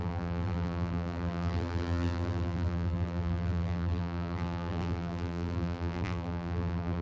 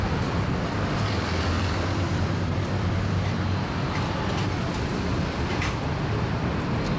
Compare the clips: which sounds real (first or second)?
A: second